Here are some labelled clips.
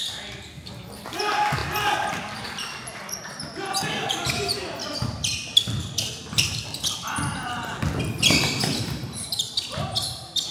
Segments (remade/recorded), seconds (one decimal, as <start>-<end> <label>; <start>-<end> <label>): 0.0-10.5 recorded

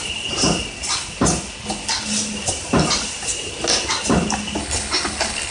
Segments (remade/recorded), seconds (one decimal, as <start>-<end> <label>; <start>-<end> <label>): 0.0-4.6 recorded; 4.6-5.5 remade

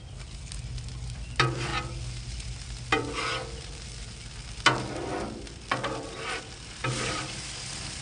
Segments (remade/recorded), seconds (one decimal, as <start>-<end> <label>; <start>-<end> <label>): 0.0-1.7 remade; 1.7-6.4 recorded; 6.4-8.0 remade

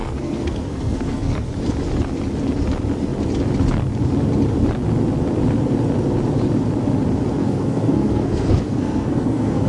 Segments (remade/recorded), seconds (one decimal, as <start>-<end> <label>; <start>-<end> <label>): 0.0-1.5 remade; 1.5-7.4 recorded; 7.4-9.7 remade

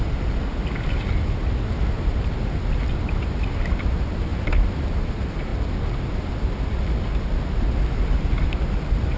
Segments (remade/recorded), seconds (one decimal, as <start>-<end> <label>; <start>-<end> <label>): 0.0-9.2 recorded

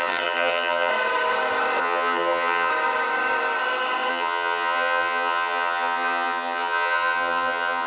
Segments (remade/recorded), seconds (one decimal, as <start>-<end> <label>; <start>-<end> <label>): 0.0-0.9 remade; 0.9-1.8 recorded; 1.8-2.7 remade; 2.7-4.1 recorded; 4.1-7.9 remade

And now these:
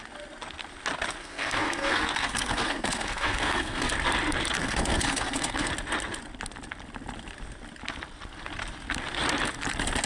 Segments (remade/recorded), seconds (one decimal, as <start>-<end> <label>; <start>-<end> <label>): 0.0-1.2 recorded; 1.2-3.9 remade; 3.9-4.6 recorded; 4.6-5.7 remade; 5.7-10.1 recorded

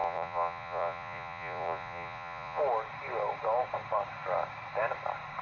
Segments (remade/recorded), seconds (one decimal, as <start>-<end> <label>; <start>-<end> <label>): 0.0-2.6 remade; 2.6-5.4 recorded